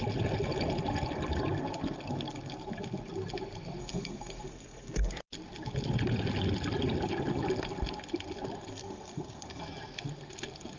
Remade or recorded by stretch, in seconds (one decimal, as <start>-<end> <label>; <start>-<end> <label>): 0.0-3.8 recorded; 3.8-5.1 remade; 5.1-8.7 recorded; 8.7-9.6 remade; 9.6-10.8 recorded